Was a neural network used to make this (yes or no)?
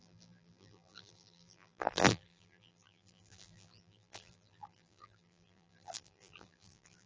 yes